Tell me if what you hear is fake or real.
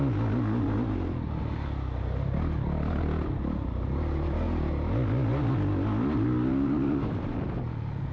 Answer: real